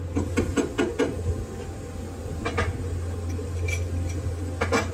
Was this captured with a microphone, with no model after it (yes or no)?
yes